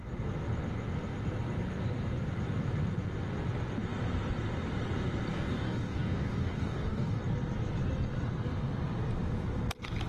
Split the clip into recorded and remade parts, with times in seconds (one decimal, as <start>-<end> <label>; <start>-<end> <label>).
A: 0.0-5.3 recorded; 5.3-7.2 remade; 7.2-10.1 recorded